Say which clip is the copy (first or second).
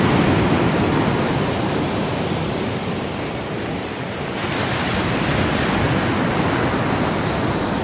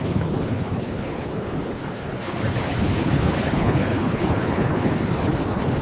second